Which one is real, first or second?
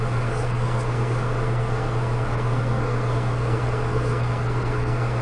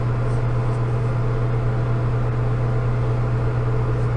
second